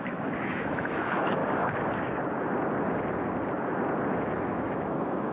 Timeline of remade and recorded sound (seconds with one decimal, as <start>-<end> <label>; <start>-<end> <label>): 0.0-1.4 remade; 1.4-4.1 recorded; 4.1-5.3 remade

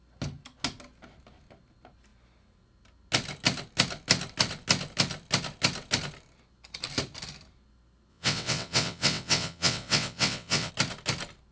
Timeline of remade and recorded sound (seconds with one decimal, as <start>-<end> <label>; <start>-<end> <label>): 0.0-8.1 recorded; 8.1-10.7 remade; 10.7-11.5 recorded

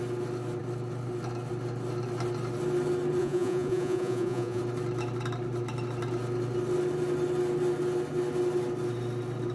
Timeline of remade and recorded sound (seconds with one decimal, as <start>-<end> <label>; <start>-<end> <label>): 0.0-3.2 recorded; 3.2-4.6 remade; 4.6-9.5 recorded

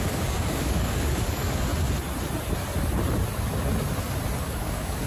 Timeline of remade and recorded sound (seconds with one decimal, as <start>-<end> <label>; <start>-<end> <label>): 0.0-1.7 remade; 1.7-4.4 recorded; 4.4-5.1 remade

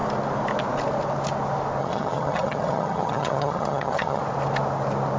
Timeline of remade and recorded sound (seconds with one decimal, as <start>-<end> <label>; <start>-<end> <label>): 0.0-1.8 recorded; 1.8-4.2 remade; 4.2-5.2 recorded

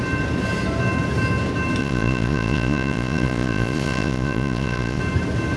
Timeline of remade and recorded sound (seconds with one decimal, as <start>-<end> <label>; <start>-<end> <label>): 0.0-1.8 recorded; 1.8-5.0 remade; 5.0-5.6 recorded

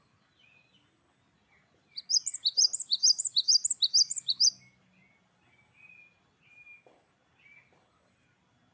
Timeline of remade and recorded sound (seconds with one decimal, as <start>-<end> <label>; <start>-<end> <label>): 0.0-8.7 recorded